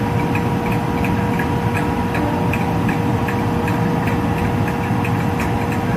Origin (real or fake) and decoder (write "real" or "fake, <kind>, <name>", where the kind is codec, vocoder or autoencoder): real